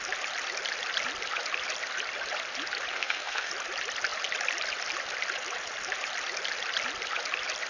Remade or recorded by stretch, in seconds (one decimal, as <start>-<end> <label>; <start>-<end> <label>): 0.0-2.9 recorded; 2.9-3.5 remade; 3.5-7.7 recorded